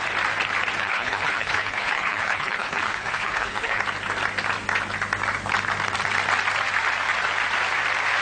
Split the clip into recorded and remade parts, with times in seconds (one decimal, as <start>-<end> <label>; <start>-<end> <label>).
0.0-0.8 recorded; 0.8-3.8 remade; 3.8-8.2 recorded